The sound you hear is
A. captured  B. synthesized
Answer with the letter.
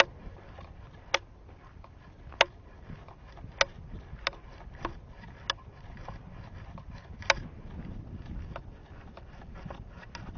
A